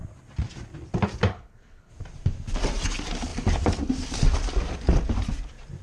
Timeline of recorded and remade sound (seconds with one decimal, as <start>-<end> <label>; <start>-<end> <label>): 0.0-1.3 recorded; 1.3-1.9 remade; 1.9-5.8 recorded